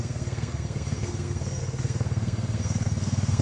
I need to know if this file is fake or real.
fake